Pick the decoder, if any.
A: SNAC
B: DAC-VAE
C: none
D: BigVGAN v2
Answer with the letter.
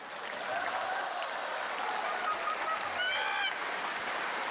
C